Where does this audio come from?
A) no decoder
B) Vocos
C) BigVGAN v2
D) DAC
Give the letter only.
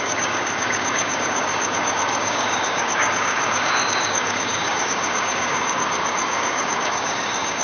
D